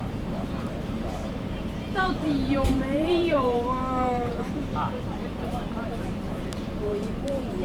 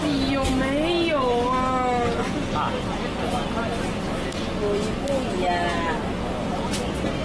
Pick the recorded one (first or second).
second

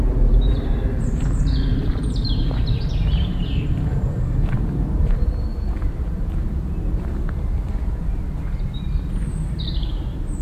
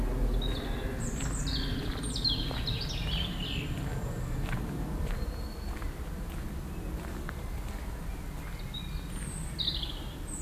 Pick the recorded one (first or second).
second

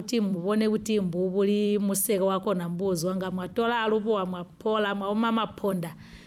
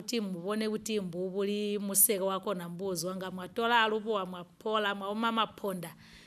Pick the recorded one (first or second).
second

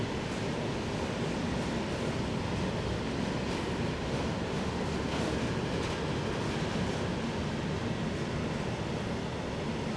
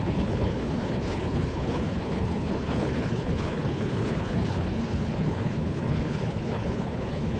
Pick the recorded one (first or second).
first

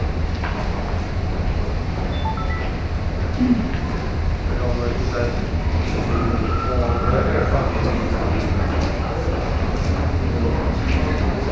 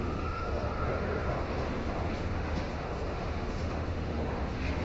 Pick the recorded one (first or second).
first